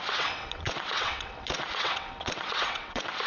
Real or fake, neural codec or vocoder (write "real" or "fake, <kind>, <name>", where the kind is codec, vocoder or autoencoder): fake, vocoder, WaveNeXt